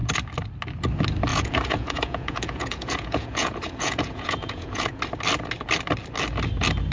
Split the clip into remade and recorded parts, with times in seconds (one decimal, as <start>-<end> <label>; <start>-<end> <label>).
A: 0.0-1.3 recorded; 1.3-5.0 remade; 5.0-6.9 recorded